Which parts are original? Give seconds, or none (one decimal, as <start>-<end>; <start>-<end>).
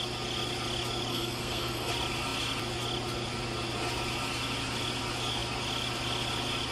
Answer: 0.0-1.1; 1.9-6.7